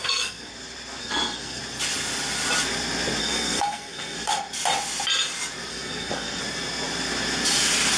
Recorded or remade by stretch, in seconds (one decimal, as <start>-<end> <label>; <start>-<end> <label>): 0.0-0.5 remade; 0.5-1.0 recorded; 1.0-1.6 remade; 1.6-3.2 recorded; 3.2-4.4 remade; 4.4-5.7 recorded; 5.7-6.4 remade; 6.4-8.0 recorded